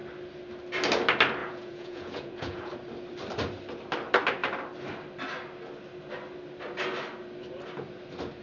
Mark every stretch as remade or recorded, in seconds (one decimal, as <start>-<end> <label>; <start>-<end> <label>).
0.0-1.4 recorded; 1.4-2.7 remade; 2.7-8.4 recorded